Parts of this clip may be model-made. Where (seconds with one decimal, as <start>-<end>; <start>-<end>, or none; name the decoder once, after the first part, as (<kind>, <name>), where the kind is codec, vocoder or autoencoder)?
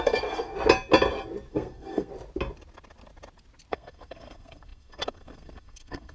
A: 0.0-0.5 (codec, SNAC); 1.5-2.1; 3.7-6.1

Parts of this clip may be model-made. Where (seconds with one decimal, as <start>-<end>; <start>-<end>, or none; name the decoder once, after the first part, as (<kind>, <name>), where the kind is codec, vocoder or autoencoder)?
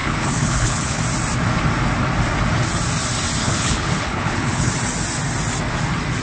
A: 0.0-1.0 (codec, HILCodec); 3.4-4.7